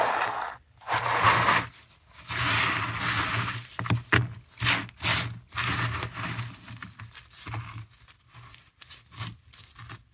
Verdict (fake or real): real